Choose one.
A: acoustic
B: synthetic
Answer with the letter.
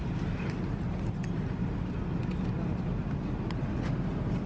A